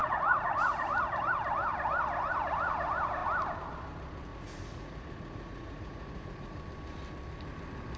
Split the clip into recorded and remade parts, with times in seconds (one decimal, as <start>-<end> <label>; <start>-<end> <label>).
0.0-1.3 remade; 1.3-4.3 recorded; 4.3-6.6 remade; 6.6-8.0 recorded